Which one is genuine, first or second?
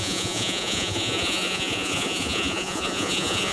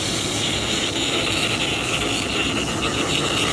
second